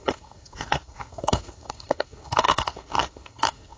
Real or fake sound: fake